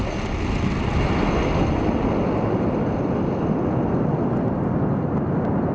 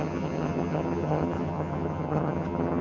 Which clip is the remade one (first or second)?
second